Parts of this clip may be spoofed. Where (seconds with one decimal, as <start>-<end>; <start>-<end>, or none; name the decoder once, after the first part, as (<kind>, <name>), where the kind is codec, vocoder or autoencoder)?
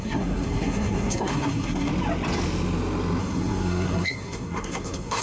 0.0-1.9 (codec, SNAC); 3.2-5.2